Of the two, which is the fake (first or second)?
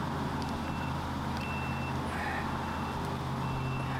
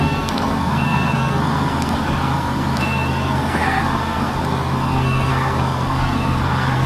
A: second